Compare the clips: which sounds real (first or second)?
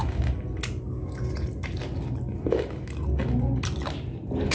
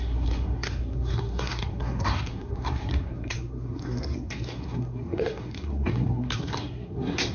first